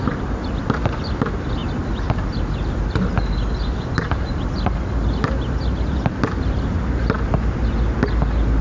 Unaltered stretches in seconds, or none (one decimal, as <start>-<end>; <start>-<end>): 0.0-8.6